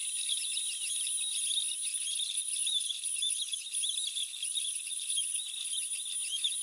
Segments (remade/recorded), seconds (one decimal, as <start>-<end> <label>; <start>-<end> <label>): 0.0-1.9 recorded; 1.9-3.6 remade; 3.6-4.2 recorded; 4.2-5.4 remade; 5.4-6.6 recorded